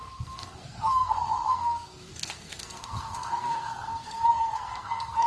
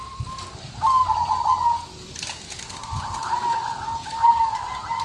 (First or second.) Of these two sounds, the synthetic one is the first